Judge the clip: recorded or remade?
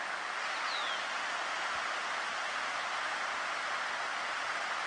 recorded